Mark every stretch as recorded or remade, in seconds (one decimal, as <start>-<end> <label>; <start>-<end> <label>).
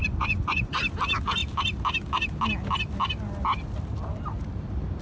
0.0-0.8 remade; 0.8-5.0 recorded